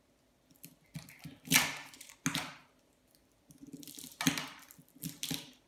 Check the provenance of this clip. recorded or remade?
recorded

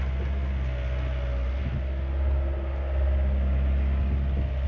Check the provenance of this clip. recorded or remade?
recorded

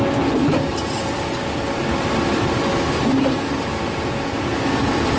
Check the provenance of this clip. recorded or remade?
remade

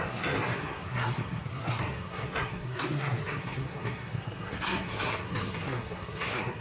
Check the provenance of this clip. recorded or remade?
remade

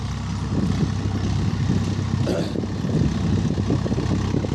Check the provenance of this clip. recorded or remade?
recorded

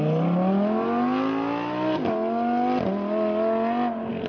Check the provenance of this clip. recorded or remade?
recorded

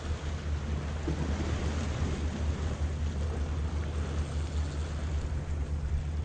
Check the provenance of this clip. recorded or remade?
recorded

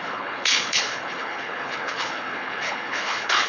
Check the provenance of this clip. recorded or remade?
remade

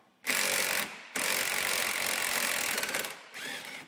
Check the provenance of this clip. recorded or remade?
recorded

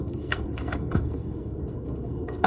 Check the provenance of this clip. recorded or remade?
remade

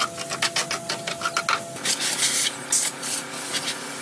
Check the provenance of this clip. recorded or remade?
recorded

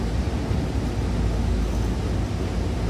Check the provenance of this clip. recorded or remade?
recorded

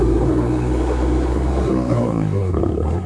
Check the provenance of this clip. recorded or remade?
remade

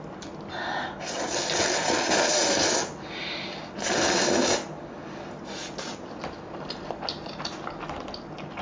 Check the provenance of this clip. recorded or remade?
recorded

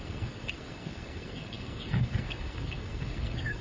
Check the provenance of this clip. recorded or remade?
remade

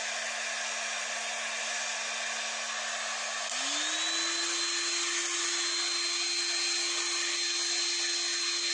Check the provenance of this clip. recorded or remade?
recorded